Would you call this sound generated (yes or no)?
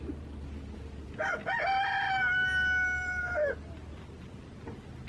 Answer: no